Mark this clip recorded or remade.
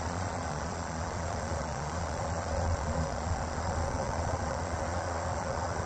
remade